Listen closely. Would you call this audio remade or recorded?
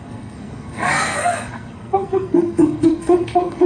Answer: remade